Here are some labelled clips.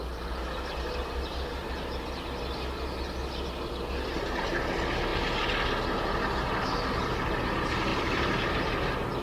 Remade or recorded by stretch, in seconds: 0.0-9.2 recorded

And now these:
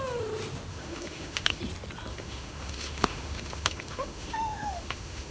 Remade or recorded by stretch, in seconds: 0.0-0.7 recorded; 0.7-1.6 remade; 1.6-2.1 recorded; 2.1-5.3 remade

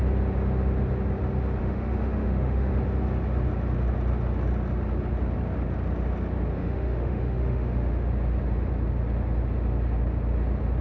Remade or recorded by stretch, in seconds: 0.0-1.6 recorded; 1.6-2.7 remade; 2.7-6.5 recorded; 6.5-8.1 remade; 8.1-10.8 recorded